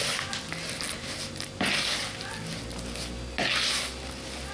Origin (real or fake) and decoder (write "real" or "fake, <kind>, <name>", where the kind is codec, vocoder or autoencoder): real